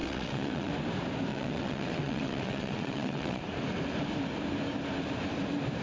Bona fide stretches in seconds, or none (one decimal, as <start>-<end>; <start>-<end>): 0.7-1.3; 3.4-5.8